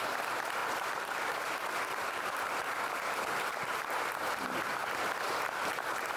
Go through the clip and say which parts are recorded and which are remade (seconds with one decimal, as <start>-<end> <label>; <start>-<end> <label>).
0.0-0.6 recorded; 0.6-4.1 remade; 4.1-6.2 recorded